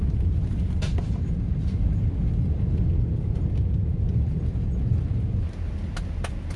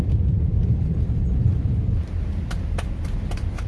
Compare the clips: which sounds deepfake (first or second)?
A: second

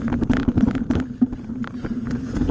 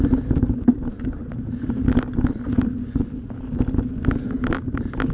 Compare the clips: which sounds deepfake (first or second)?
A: first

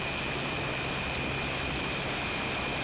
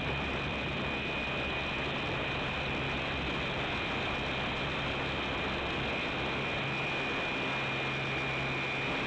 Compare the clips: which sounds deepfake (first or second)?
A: first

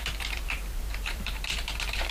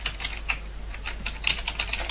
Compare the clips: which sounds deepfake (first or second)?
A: first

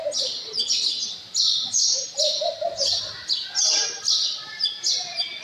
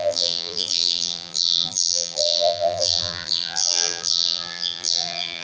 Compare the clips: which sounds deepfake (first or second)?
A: second